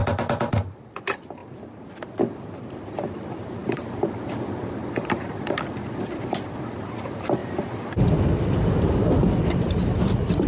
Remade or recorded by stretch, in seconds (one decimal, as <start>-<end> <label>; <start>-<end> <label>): 0.0-0.8 recorded; 0.8-1.4 remade; 1.4-3.1 recorded; 3.1-7.4 remade; 7.4-8.5 recorded; 8.5-10.5 remade